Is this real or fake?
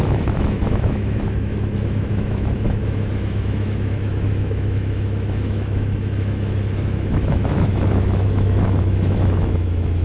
fake